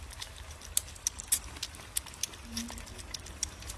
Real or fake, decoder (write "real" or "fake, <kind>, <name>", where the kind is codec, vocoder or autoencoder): real